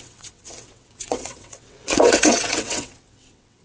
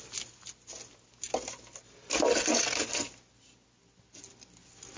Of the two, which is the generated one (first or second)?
first